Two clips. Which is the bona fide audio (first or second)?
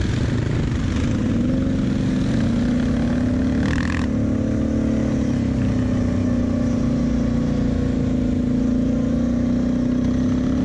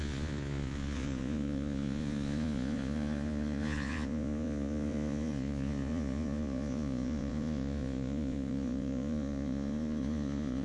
first